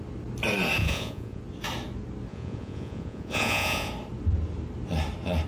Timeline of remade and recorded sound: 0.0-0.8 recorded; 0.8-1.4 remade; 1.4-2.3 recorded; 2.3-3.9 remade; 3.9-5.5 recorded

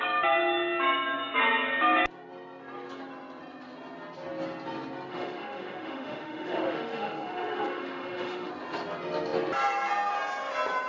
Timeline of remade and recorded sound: 0.0-5.1 recorded; 5.1-8.5 remade; 8.5-10.9 recorded

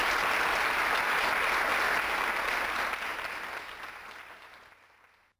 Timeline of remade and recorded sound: 0.0-5.4 recorded

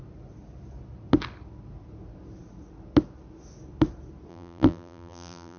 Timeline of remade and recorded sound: 0.0-4.3 recorded; 4.3-5.6 remade